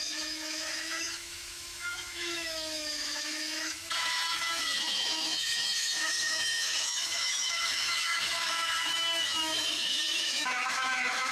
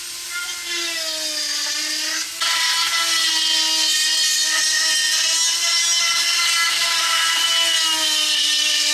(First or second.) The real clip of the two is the second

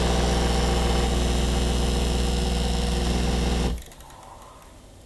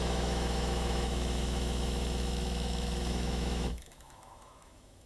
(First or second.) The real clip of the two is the first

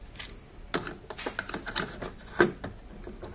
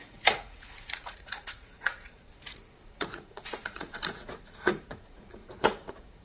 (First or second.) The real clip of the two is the first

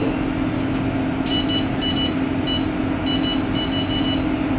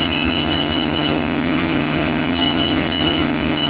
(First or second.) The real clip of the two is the first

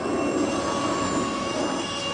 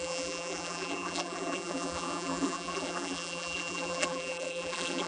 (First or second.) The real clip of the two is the first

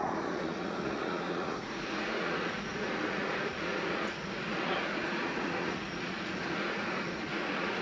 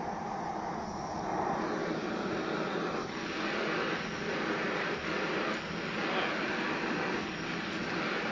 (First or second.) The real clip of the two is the second